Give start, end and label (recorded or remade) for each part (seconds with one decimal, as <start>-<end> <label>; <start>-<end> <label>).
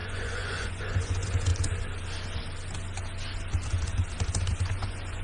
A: 0.0-1.5 remade; 1.5-4.6 recorded; 4.6-5.2 remade